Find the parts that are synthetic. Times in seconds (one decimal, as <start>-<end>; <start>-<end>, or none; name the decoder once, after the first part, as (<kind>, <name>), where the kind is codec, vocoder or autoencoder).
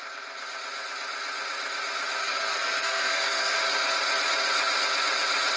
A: 2.2-3.6 (codec, SNAC)